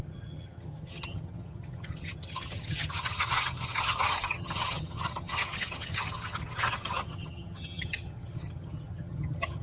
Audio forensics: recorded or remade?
remade